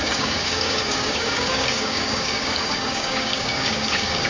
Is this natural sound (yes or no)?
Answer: no